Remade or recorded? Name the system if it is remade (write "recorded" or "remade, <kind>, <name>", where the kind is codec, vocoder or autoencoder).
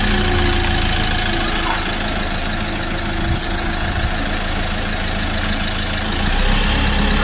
recorded